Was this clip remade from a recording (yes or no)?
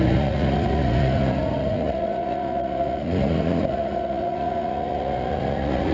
yes